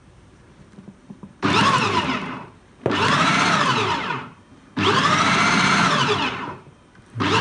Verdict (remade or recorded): remade